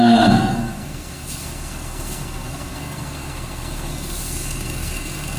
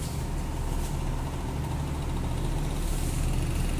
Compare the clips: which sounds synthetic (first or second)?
first